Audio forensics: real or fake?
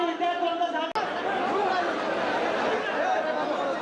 real